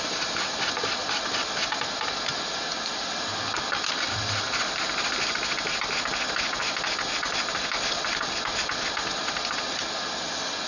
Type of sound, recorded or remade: recorded